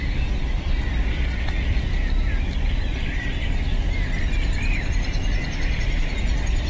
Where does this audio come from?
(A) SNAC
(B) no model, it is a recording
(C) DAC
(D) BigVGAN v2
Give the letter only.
D